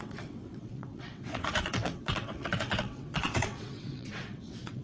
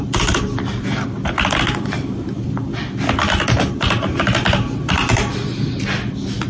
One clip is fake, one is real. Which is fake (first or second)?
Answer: first